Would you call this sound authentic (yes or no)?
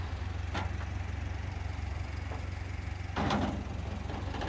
yes